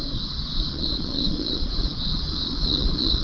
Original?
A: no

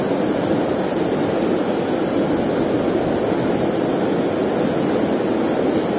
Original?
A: yes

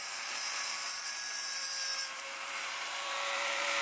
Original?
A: no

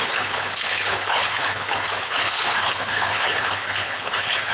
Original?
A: no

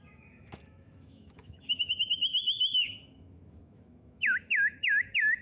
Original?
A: no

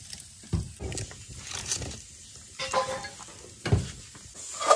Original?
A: yes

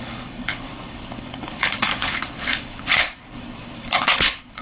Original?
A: no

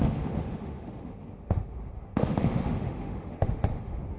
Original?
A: no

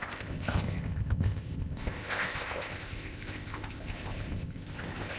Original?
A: no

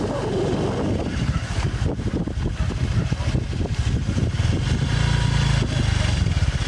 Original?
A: yes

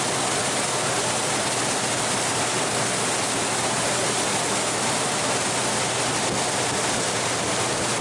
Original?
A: yes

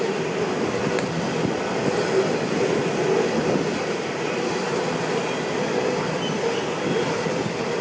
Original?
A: yes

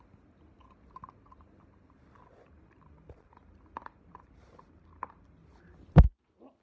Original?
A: yes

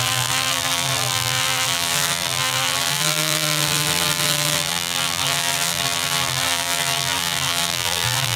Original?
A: no